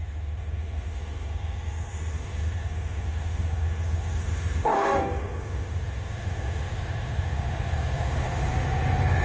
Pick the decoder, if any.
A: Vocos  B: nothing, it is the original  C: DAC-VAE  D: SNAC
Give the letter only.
C